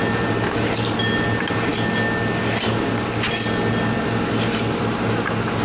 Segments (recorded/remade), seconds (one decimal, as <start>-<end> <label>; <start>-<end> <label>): 0.0-5.6 recorded